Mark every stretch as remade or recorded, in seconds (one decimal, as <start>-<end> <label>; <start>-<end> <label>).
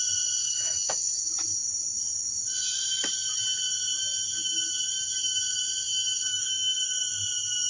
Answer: 0.0-0.4 recorded; 0.4-1.2 remade; 1.2-6.2 recorded; 6.2-6.8 remade; 6.8-7.7 recorded